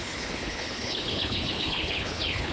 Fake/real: fake